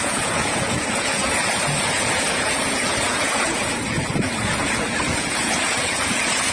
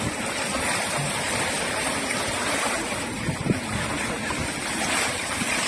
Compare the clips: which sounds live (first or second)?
second